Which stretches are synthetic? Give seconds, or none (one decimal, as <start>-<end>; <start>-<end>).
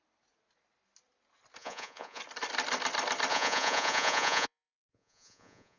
1.6-2.2; 3.3-5.8